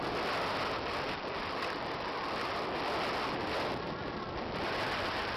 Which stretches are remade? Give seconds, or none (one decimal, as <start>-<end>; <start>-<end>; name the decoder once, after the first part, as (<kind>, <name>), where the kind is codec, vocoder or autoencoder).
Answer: none